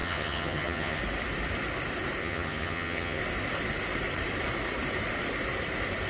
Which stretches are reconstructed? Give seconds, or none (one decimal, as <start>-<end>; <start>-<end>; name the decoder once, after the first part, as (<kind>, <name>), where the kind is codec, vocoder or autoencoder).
0.0-1.0 (vocoder, HiFi-GAN); 2.2-3.2